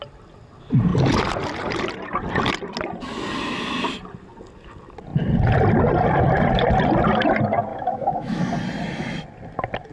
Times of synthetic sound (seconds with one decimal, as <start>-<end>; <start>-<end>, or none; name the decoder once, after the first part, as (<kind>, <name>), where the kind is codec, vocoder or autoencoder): 7.7-8.4 (autoencoder, DAC-VAE)

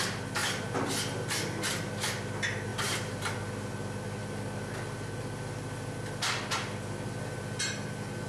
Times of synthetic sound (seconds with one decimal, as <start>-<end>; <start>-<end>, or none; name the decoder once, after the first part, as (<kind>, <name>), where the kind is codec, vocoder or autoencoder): 2.7-3.3 (vocoder, BigVGAN v2)

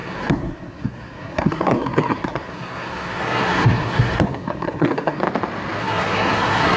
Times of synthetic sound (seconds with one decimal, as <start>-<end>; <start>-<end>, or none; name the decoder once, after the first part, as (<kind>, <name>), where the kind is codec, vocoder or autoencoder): 0.0-5.2 (codec, SNAC); 5.8-6.8

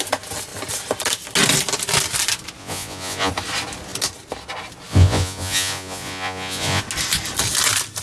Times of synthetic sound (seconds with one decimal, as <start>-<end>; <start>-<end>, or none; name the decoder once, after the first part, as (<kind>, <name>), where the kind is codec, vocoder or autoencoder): 2.6-3.3 (vocoder, Vocos); 4.9-6.8

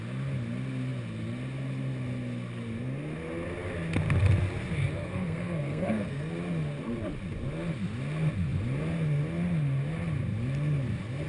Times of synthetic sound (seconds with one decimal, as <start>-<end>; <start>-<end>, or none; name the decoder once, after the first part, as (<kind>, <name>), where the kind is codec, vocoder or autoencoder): 5.0-6.3 (codec, SNAC)

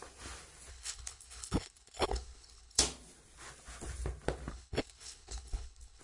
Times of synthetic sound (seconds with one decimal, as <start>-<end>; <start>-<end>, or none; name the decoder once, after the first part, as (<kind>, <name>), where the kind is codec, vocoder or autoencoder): 0.7-2.8 (codec, HILCodec); 4.5-6.0

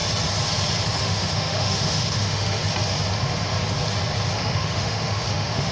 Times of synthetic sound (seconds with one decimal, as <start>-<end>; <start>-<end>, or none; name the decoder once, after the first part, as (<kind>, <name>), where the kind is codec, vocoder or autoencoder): 1.0-2.6 (autoencoder, DAC-VAE); 4.3-5.7